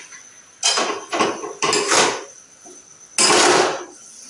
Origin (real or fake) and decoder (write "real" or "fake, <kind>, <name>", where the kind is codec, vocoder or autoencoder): real